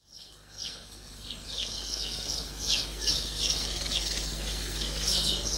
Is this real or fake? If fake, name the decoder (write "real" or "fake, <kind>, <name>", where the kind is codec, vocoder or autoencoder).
fake, codec, SNAC